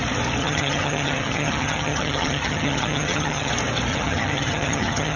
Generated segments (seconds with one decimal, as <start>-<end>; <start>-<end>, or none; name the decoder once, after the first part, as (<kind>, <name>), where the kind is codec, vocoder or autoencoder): 0.4-3.5 (vocoder, HiFi-GAN); 3.9-5.2